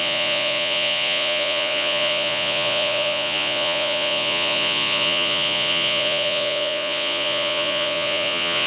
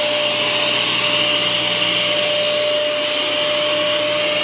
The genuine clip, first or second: second